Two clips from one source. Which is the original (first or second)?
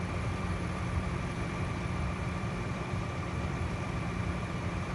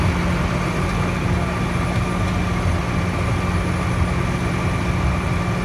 second